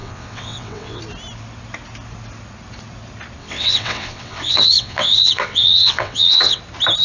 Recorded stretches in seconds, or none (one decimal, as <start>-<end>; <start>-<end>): 1.0-3.4; 6.6-7.0